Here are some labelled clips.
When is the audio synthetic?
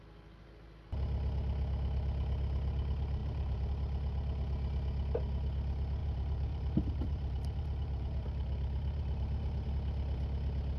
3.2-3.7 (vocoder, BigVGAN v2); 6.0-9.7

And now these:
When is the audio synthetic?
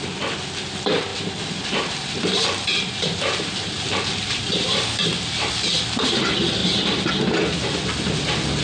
1.1-5.5 (vocoder, BigVGAN v2); 6.6-7.1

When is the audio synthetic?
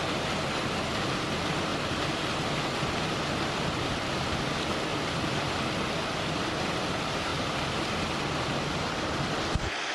4.9-5.5 (vocoder, BigVGAN v2); 7.3-9.5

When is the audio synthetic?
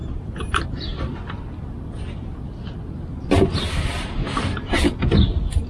0.0-1.2 (vocoder, BigVGAN v2); 3.5-4.1